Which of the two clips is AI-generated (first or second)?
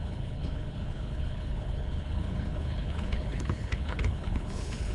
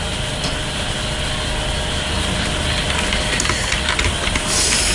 first